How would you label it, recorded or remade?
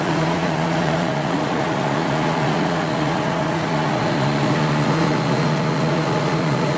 remade